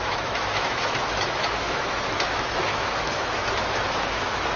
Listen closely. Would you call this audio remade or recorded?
remade